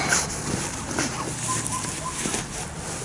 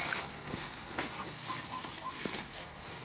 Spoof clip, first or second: second